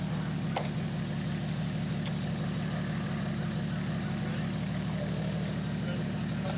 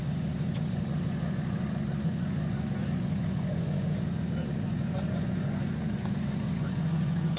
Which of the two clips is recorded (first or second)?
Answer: first